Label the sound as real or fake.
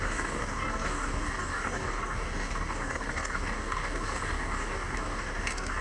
fake